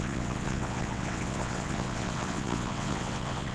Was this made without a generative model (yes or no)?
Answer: no